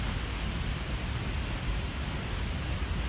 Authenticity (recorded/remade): recorded